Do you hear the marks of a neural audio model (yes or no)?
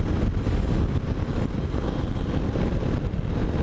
no